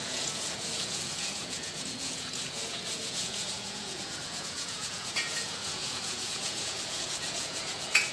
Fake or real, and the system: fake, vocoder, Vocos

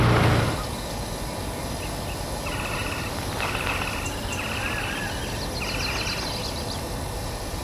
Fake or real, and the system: real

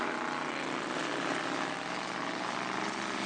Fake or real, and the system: real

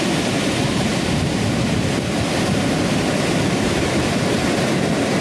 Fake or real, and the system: real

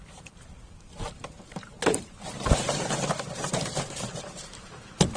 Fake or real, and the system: fake, vocoder, BigVGAN v2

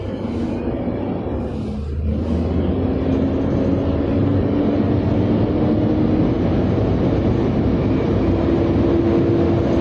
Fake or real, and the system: real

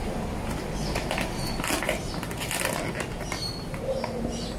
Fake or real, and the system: real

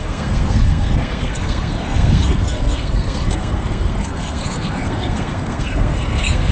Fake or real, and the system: fake, codec, SNAC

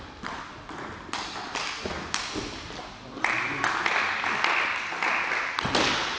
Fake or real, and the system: real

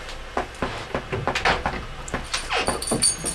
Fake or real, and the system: real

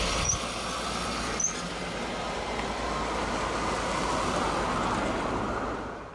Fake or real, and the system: real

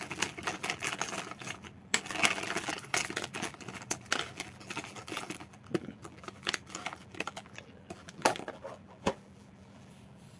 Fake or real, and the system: fake, vocoder, BigVGAN v2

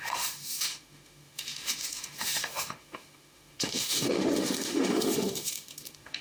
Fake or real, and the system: fake, autoencoder, DAC-VAE